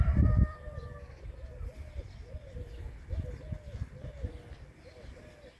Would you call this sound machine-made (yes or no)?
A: yes